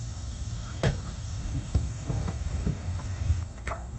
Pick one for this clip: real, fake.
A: fake